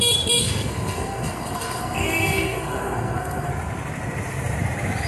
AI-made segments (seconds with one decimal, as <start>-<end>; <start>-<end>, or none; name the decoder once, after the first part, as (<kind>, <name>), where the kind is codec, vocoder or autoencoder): 0.4-3.5 (codec, SNAC)